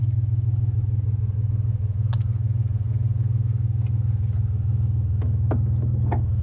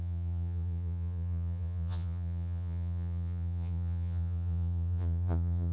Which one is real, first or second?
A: first